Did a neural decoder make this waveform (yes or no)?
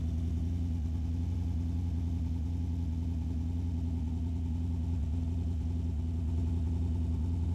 no